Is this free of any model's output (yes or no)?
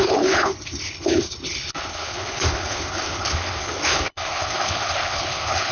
no